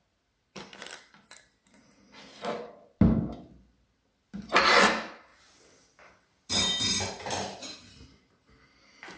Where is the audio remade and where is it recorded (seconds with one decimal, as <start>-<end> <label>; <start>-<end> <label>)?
0.0-5.3 recorded; 5.3-7.0 remade; 7.0-9.2 recorded